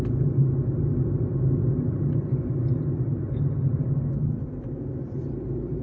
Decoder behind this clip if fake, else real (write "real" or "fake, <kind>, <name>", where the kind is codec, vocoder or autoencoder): real